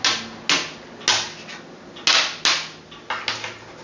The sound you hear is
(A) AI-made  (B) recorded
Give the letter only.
B